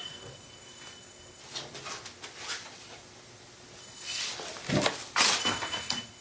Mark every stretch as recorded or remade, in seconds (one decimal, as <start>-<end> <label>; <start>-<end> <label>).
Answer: 0.0-1.4 remade; 1.4-3.8 recorded; 3.8-4.2 remade; 4.2-5.4 recorded; 5.4-6.2 remade